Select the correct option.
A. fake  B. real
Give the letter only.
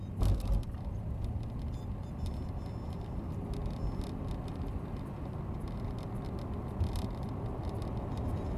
B